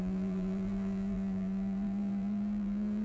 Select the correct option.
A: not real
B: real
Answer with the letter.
A